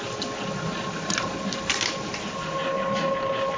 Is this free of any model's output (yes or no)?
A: yes